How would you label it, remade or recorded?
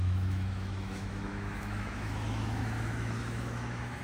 remade